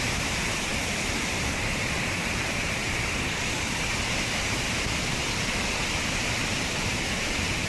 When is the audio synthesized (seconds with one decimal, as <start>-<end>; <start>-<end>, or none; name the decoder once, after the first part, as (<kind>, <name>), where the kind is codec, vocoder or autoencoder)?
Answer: 0.0-0.7 (vocoder, BigVGAN v2); 2.3-2.8; 6.6-7.7